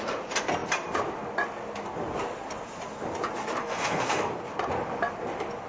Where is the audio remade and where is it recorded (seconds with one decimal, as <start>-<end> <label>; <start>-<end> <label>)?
0.0-3.6 recorded; 3.6-4.3 remade; 4.3-5.7 recorded